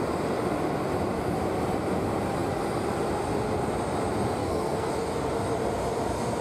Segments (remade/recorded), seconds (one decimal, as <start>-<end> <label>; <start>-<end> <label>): 0.0-4.4 recorded; 4.4-4.9 remade; 4.9-6.4 recorded